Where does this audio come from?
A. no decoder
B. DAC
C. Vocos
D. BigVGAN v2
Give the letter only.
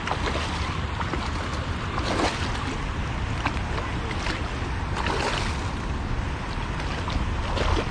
A